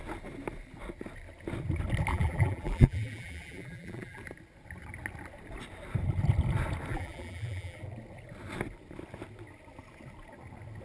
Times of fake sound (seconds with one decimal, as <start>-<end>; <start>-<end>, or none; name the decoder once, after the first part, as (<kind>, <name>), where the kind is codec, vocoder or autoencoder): 2.1-4.2 (vocoder, BigVGAN v2); 6.9-7.8